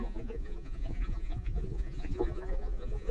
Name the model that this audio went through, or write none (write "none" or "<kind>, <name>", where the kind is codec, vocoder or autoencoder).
vocoder, Vocos